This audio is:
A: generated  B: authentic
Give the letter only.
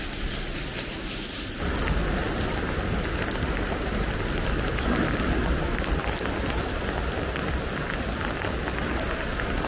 B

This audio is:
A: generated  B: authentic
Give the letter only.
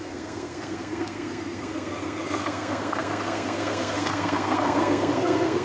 A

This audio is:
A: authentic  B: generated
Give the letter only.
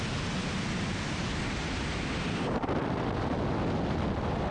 A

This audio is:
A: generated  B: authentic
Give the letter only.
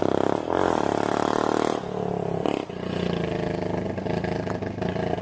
B